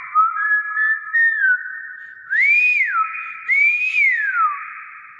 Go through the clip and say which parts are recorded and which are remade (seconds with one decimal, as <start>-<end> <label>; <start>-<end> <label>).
0.0-5.2 recorded